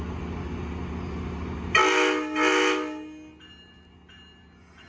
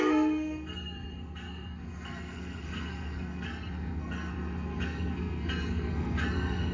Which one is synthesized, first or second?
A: second